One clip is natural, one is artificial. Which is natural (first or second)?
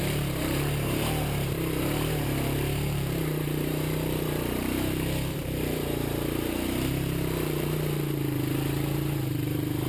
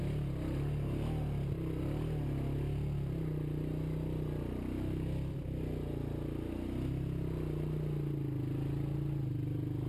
second